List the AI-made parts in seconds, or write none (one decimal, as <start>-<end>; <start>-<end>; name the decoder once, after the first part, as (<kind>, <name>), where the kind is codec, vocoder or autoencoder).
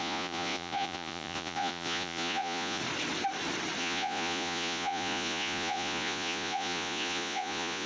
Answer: 0.0-2.8 (vocoder, Vocos); 3.8-7.9